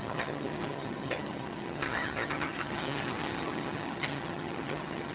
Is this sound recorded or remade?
remade